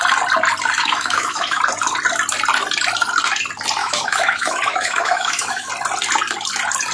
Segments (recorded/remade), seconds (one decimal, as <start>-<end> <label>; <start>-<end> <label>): 0.0-0.8 recorded; 0.8-1.6 remade; 1.6-3.8 recorded; 3.8-5.7 remade; 5.7-6.9 recorded